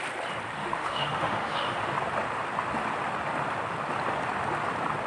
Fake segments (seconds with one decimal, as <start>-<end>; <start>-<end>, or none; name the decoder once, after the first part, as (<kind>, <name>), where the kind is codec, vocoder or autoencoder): 0.6-1.8 (autoencoder, DAC-VAE)